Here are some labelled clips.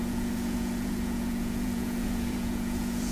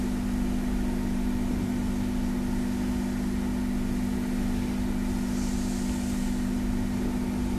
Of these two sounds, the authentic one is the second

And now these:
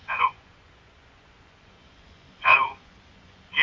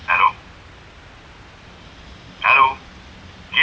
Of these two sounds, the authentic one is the second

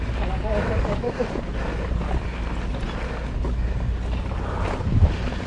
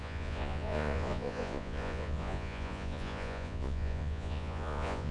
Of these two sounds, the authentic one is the first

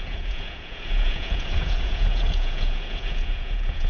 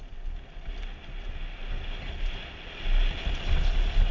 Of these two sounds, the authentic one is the second